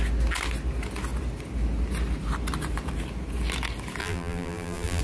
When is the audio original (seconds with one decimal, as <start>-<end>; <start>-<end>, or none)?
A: 0.0-4.0